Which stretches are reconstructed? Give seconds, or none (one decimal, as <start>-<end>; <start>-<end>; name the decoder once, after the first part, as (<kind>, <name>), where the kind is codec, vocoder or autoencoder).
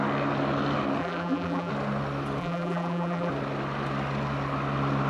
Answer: 1.0-1.7 (vocoder, BigVGAN v2); 2.4-3.3